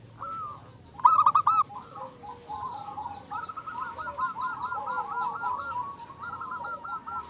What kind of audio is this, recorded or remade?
recorded